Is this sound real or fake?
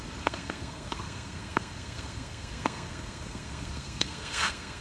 fake